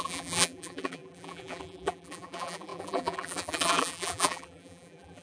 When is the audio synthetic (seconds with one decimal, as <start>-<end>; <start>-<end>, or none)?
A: 0.0-5.2